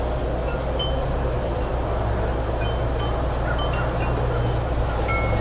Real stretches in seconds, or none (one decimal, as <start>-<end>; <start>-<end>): 0.0-5.4